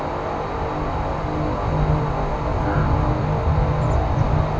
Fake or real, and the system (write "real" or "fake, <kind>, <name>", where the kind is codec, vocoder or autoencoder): real